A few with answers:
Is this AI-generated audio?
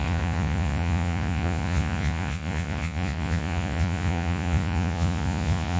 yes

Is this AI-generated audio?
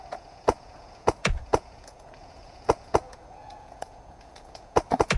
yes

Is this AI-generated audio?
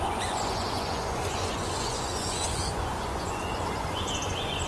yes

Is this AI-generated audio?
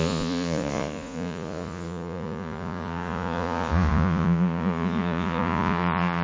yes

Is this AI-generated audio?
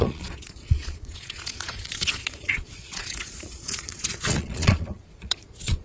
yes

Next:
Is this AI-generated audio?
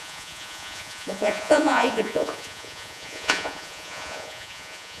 yes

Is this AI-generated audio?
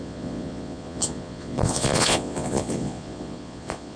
yes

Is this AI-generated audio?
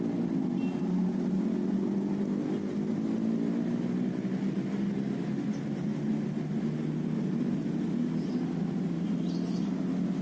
no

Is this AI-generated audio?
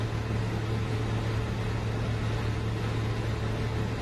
no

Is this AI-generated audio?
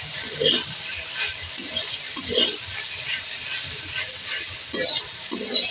no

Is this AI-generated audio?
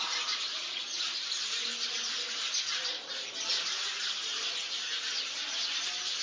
no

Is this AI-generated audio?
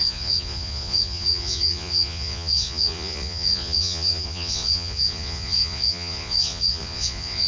yes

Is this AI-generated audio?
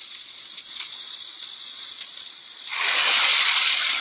yes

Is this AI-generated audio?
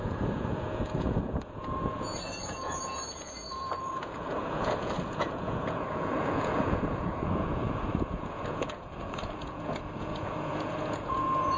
yes